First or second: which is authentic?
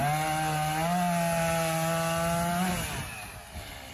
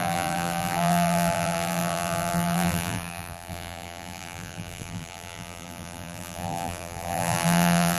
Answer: first